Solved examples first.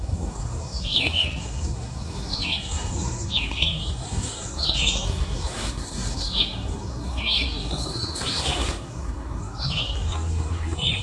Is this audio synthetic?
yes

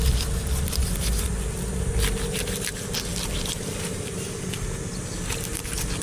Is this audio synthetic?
no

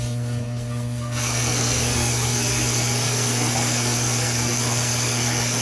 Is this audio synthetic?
yes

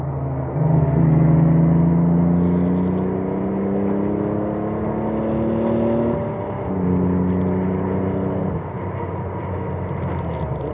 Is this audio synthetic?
no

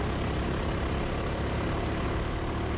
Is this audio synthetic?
no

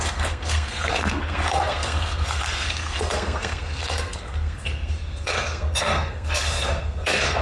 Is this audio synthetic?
yes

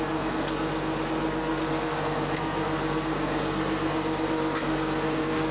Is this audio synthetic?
yes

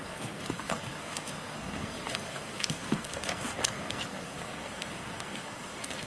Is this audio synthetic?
yes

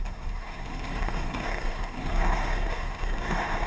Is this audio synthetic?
yes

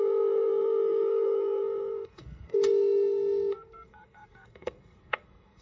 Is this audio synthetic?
yes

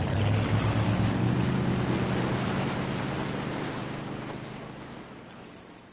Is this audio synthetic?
no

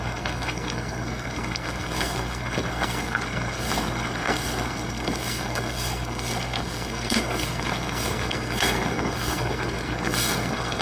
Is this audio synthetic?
yes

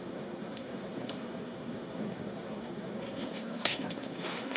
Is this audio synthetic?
yes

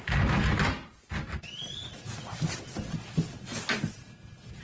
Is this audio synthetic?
no